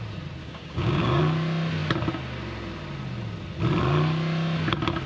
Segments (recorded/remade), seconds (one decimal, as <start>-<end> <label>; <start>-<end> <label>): 0.0-0.4 recorded; 0.4-1.2 remade; 1.2-5.1 recorded